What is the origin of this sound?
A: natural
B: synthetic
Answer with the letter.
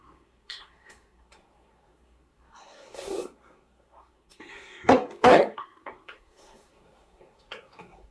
B